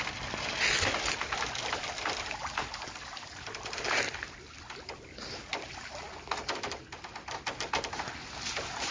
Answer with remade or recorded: recorded